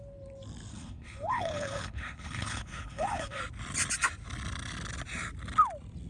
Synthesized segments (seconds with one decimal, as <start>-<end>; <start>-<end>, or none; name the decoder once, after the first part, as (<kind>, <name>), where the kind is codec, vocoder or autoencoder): 0.7-3.4 (codec, HILCodec)